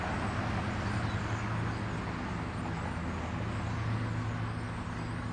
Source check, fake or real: real